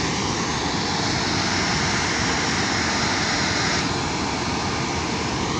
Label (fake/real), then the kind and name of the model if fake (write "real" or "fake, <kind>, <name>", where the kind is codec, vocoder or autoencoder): real